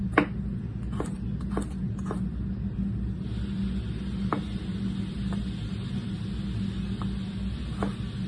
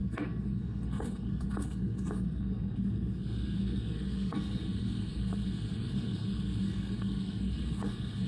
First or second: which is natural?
first